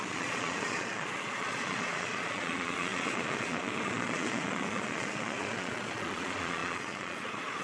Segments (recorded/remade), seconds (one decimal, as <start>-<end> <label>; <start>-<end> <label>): 0.0-7.6 remade

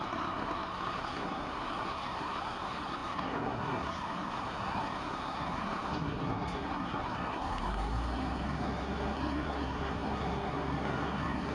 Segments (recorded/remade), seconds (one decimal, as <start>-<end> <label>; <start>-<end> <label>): 0.0-11.5 remade